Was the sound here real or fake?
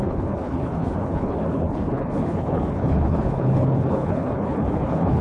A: fake